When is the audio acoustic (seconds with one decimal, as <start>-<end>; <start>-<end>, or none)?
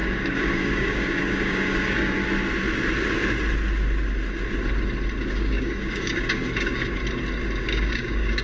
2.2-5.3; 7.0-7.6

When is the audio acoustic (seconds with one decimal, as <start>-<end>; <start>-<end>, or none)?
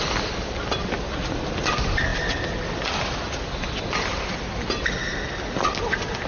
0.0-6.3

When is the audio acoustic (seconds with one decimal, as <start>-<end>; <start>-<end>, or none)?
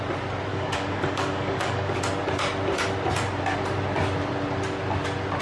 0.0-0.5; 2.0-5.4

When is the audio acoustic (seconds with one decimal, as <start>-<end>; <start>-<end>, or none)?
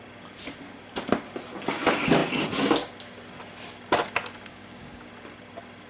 0.0-4.5; 5.1-5.9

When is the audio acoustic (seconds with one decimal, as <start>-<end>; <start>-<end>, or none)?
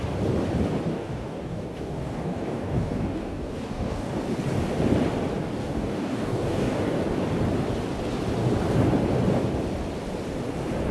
0.0-0.9; 4.2-5.6; 7.0-10.9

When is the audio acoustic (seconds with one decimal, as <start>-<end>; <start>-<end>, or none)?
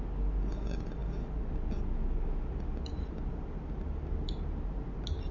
0.0-5.3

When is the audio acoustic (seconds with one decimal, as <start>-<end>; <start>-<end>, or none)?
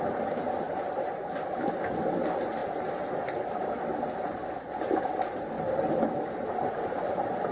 0.0-7.5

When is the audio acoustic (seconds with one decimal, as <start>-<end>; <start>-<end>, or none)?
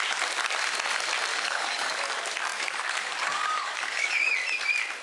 0.0-1.3; 1.9-2.5; 4.3-5.0